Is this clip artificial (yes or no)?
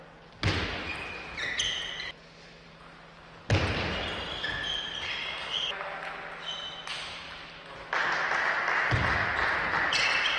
no